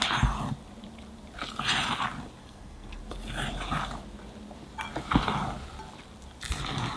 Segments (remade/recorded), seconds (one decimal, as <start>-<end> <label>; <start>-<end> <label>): 0.0-2.4 recorded; 2.4-3.0 remade; 3.0-7.0 recorded